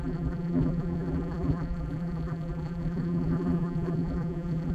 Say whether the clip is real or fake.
fake